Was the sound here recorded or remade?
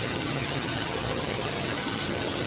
remade